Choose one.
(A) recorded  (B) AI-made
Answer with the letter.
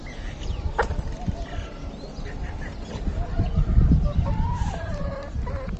A